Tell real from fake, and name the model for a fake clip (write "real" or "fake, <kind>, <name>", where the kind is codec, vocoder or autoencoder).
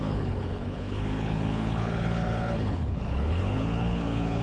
fake, codec, HILCodec